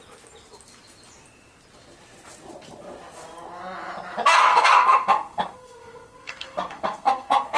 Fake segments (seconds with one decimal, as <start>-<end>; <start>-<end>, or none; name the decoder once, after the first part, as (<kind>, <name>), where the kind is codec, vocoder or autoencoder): 4.5-7.6 (codec, SNAC)